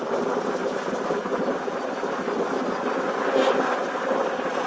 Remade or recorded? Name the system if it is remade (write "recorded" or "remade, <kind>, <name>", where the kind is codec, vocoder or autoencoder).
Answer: recorded